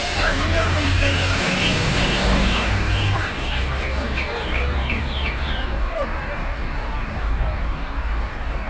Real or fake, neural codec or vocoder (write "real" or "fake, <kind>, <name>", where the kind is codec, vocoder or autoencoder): fake, codec, DAC